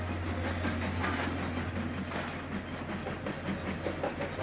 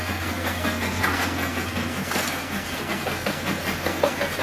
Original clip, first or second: first